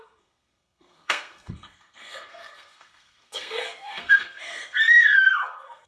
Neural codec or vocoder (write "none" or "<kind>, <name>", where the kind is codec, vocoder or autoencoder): codec, SNAC